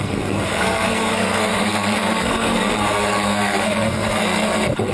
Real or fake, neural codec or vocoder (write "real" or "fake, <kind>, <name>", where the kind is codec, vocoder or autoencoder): fake, codec, SNAC